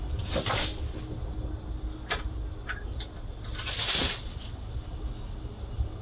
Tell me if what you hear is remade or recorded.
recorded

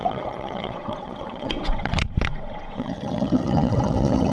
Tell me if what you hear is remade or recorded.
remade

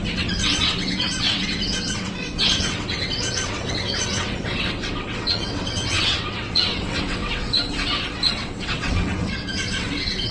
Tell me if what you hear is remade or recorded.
remade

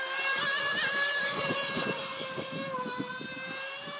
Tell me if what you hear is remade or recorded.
recorded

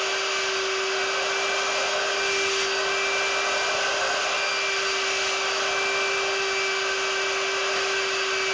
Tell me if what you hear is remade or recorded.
recorded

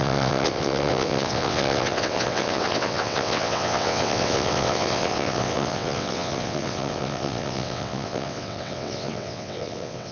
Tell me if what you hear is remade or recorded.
remade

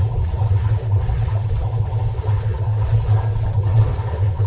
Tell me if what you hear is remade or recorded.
remade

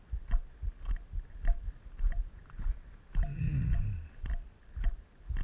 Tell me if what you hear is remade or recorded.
recorded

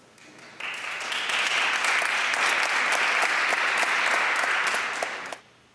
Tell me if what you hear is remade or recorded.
recorded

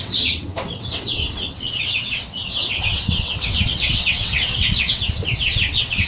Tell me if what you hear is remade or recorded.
remade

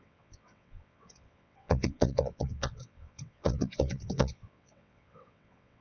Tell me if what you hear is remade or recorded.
remade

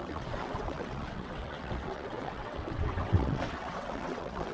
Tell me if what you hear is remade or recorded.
remade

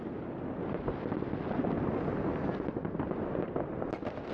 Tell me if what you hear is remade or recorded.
recorded